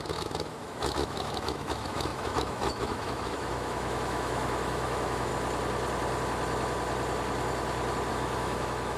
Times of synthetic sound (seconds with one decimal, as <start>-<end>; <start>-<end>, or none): 0.0-5.3; 8.1-9.0